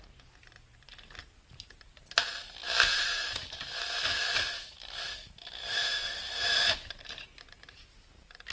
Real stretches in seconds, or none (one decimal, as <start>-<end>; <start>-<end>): 0.0-2.6; 7.0-8.5